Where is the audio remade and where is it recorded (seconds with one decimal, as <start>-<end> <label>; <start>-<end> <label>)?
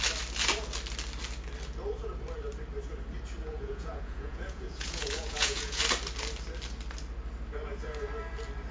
0.0-3.4 recorded; 3.4-5.8 remade; 5.8-8.7 recorded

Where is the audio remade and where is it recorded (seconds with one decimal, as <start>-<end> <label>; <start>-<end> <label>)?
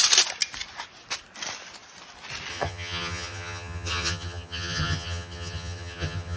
0.0-2.5 recorded; 2.5-6.4 remade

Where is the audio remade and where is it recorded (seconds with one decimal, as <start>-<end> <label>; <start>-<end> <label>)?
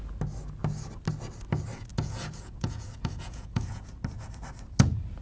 0.0-1.9 recorded; 1.9-3.9 remade; 3.9-5.2 recorded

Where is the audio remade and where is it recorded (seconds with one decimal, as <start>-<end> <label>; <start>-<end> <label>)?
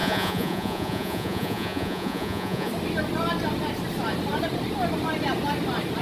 0.0-2.7 remade; 2.7-6.0 recorded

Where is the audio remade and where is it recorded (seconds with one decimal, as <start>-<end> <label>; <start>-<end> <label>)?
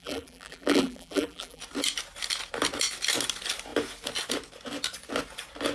0.0-1.6 remade; 1.6-5.7 recorded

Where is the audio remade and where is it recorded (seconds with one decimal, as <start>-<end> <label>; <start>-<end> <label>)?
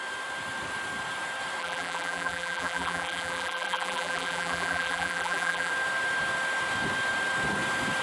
0.0-1.6 recorded; 1.6-5.7 remade; 5.7-8.0 recorded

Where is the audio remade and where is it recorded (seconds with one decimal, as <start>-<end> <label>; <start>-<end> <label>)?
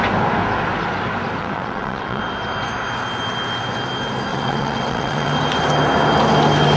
0.0-1.4 recorded; 1.4-2.2 remade; 2.2-4.3 recorded; 4.3-5.3 remade; 5.3-6.8 recorded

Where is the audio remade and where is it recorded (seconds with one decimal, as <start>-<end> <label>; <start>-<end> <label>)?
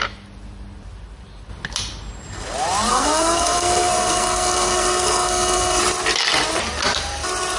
0.0-2.9 recorded; 2.9-5.8 remade; 5.8-7.6 recorded